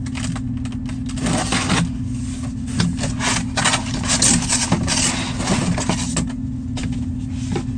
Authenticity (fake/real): real